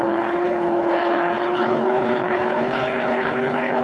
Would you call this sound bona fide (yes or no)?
no